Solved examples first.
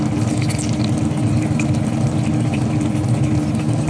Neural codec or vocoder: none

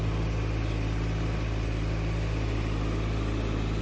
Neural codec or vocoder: none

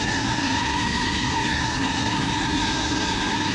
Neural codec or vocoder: codec, SNAC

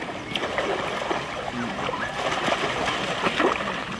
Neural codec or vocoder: none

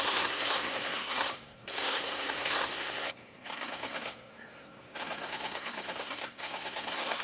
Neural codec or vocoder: codec, SNAC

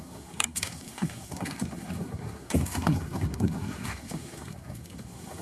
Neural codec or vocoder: codec, SNAC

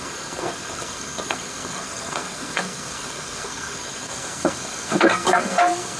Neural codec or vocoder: codec, SNAC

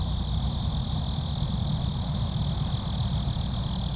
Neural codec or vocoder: none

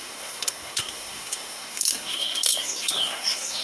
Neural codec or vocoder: codec, SNAC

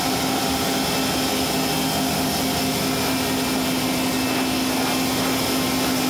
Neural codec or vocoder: none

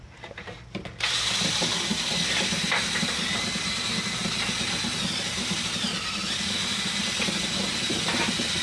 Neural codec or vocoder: none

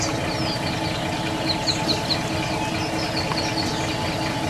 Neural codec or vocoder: none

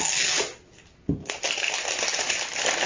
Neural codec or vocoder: none